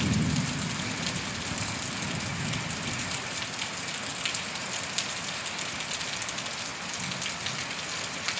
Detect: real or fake real